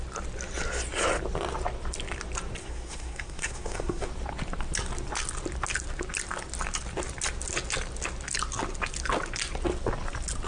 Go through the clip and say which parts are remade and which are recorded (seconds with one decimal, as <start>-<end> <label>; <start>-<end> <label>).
0.0-2.6 recorded; 2.6-4.1 remade; 4.1-10.5 recorded